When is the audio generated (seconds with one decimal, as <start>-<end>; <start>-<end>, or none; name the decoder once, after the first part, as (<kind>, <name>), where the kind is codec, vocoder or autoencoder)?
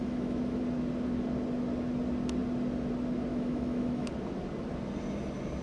0.0-0.6 (autoencoder, DAC-VAE); 3.3-4.1